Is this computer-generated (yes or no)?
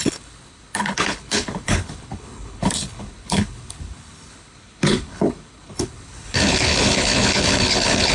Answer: yes